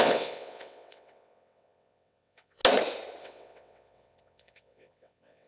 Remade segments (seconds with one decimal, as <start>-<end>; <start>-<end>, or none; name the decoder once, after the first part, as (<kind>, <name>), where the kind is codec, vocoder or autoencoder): 0.0-2.6 (vocoder, WaveNeXt); 3.2-5.5